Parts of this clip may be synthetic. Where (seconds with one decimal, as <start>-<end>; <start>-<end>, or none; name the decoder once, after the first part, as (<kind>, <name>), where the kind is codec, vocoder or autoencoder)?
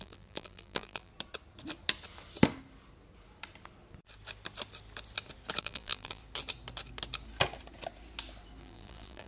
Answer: 0.0-1.1 (vocoder, BigVGAN v2); 5.6-6.2; 8.6-9.3